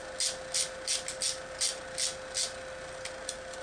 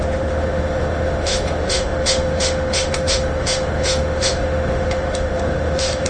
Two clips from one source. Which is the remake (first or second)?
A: second